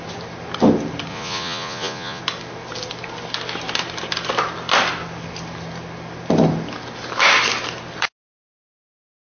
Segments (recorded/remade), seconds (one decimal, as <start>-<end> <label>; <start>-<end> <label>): 0.0-1.1 recorded; 1.1-2.2 remade; 2.2-9.3 recorded